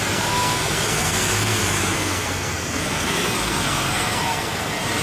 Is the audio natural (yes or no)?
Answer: no